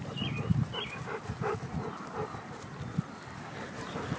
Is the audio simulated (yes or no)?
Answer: no